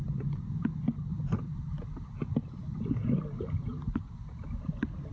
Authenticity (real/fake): real